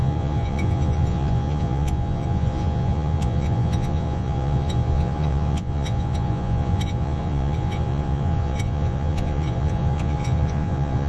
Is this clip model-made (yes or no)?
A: yes